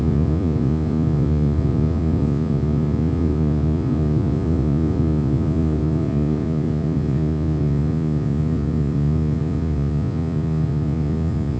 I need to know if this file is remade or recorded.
remade